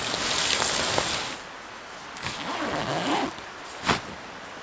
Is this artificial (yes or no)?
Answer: no